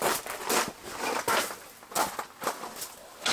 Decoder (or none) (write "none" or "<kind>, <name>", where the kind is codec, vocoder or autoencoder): none